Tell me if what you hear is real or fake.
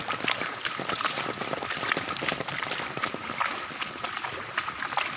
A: real